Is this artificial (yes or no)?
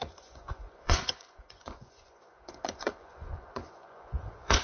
yes